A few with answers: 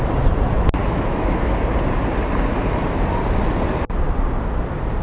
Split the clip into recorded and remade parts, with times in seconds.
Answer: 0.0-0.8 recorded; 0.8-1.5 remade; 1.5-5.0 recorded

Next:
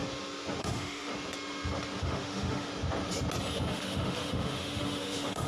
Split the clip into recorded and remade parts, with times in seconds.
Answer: 0.0-0.6 recorded; 0.6-1.1 remade; 1.1-2.0 recorded; 2.0-2.7 remade; 2.7-3.7 recorded; 3.7-5.5 remade

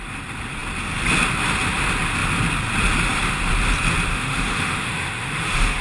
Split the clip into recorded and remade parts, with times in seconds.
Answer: 0.0-4.1 recorded; 4.1-5.8 remade